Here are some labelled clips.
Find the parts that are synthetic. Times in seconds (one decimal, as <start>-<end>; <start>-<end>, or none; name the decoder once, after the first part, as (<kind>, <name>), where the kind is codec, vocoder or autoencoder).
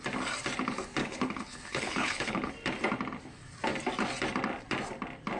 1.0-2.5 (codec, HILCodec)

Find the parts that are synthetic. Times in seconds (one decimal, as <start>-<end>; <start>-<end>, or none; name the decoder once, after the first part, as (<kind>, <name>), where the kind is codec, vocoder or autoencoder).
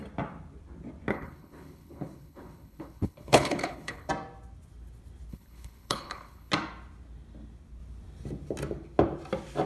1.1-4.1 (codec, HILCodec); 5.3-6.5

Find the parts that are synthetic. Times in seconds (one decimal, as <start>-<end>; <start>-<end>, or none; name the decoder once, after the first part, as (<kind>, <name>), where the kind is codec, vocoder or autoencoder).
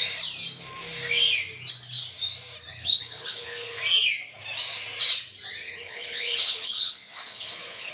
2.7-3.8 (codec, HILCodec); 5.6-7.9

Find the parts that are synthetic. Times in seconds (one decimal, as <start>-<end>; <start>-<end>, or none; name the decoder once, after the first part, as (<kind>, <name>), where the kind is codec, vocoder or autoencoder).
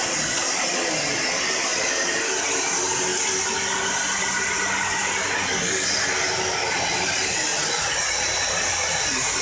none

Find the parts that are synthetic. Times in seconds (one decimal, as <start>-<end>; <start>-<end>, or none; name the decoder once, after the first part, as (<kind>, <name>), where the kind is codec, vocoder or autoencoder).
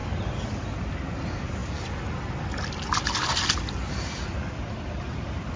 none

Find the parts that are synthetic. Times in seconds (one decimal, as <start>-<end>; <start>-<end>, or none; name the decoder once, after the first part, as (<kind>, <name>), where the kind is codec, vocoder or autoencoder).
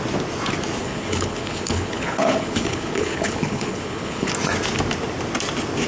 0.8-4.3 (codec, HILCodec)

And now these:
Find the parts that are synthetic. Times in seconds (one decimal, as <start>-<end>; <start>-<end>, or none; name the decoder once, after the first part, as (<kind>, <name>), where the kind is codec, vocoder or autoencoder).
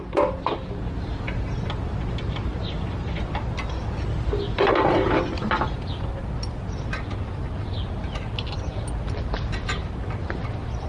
none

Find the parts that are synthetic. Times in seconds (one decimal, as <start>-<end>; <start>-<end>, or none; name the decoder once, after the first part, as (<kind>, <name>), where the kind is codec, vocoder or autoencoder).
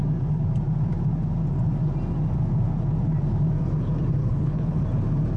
4.2-4.8 (codec, HILCodec)